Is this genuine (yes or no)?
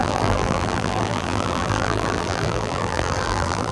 no